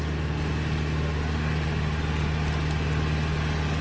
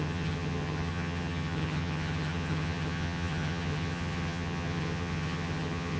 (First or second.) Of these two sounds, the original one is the first